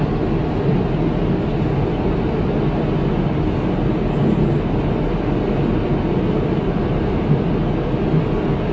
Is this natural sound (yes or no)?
yes